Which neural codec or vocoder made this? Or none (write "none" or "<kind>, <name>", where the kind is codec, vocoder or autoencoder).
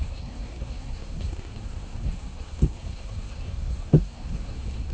codec, SNAC